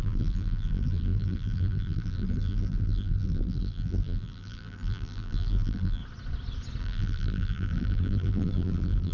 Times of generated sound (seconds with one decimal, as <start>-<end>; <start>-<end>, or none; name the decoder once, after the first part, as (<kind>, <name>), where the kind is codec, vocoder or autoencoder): 0.0-6.0 (vocoder, BigVGAN v2); 6.8-9.1